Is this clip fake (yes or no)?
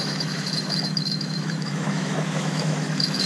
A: yes